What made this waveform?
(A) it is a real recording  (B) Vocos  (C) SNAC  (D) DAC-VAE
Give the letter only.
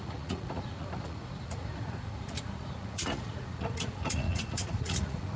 B